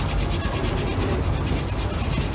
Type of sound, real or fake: real